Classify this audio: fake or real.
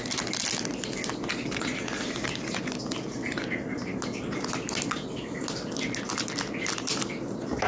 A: real